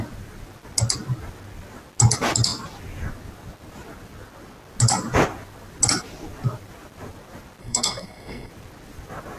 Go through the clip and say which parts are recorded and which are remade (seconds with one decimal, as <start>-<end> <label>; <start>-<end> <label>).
0.0-7.6 recorded; 7.6-8.5 remade; 8.5-9.4 recorded

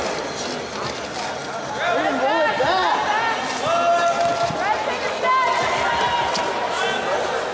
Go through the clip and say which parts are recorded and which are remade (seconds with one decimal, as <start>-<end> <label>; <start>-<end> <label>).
0.0-7.5 recorded

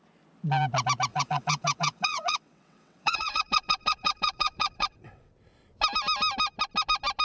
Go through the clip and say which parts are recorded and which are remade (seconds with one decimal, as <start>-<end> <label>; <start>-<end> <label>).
0.0-1.1 recorded; 1.1-5.3 remade; 5.3-7.2 recorded

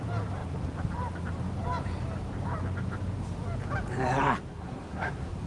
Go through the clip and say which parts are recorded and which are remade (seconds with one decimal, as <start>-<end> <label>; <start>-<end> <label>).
0.0-4.5 recorded; 4.5-5.5 remade

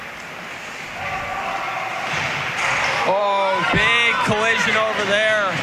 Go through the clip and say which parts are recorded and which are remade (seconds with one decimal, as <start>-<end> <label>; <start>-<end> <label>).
0.0-5.6 recorded

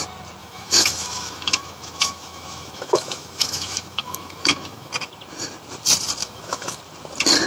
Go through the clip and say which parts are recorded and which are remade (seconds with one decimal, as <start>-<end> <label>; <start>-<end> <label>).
0.0-0.4 recorded; 0.4-4.9 remade; 4.9-6.2 recorded; 6.2-6.8 remade; 6.8-7.5 recorded

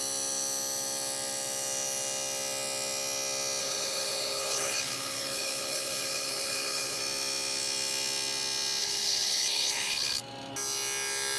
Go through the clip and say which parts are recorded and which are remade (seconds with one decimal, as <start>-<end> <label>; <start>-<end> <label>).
0.0-3.6 recorded; 3.6-7.0 remade; 7.0-8.8 recorded; 8.8-10.2 remade; 10.2-11.4 recorded